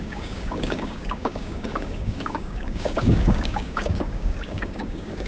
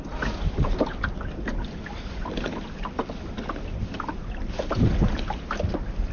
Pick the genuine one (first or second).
second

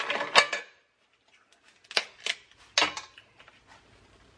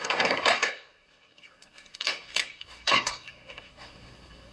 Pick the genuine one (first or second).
first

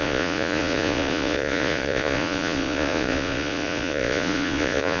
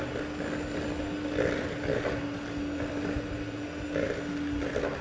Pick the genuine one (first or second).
second